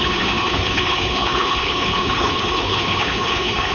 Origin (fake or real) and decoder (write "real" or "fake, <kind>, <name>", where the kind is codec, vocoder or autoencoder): fake, codec, HILCodec